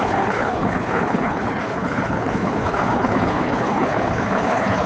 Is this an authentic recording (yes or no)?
no